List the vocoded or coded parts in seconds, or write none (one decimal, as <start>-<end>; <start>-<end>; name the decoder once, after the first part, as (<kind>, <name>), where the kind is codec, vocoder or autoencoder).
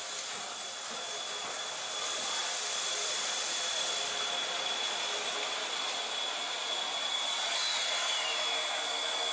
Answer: none